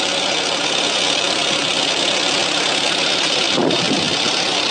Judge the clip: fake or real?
real